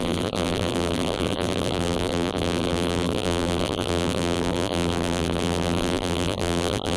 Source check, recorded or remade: remade